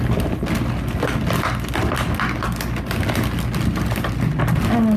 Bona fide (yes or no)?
yes